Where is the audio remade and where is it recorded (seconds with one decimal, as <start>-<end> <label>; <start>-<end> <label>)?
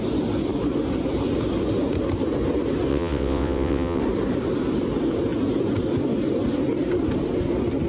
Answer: 0.0-2.9 recorded; 2.9-4.0 remade; 4.0-7.9 recorded